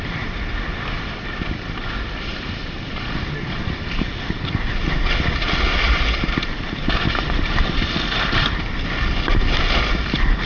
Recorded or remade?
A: recorded